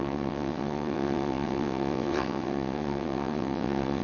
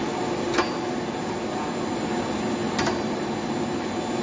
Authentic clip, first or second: second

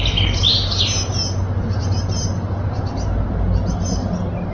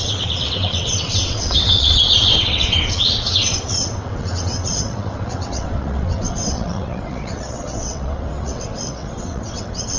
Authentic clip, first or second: first